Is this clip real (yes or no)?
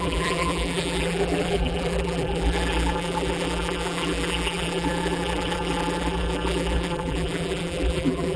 no